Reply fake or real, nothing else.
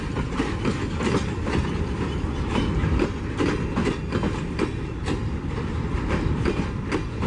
real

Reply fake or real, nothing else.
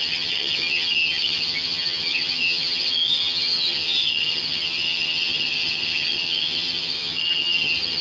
fake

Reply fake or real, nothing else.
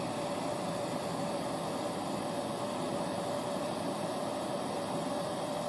real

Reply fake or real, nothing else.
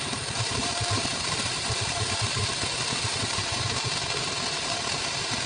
fake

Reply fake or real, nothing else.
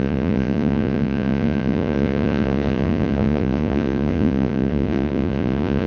fake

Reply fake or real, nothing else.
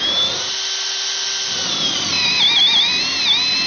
real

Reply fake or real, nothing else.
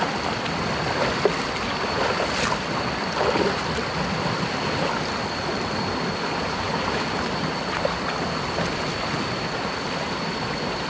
real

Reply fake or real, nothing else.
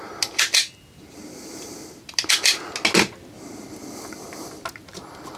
real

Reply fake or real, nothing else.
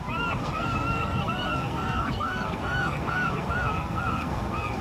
fake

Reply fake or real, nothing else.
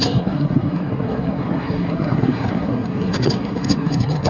fake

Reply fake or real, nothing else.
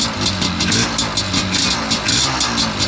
real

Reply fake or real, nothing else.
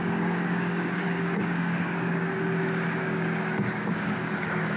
fake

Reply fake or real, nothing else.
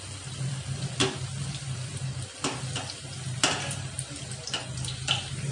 real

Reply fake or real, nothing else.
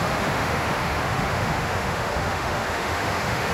fake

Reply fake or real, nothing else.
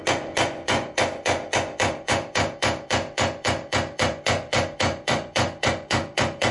fake